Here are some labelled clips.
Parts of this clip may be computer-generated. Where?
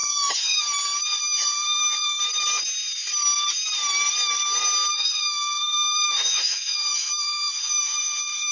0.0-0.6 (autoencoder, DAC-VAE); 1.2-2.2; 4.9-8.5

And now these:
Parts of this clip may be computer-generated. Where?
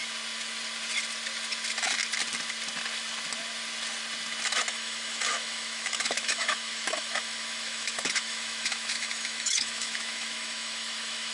4.7-11.3 (autoencoder, DAC-VAE)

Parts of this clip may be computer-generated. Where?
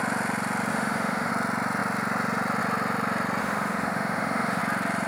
0.7-1.3 (autoencoder, DAC-VAE); 3.4-4.6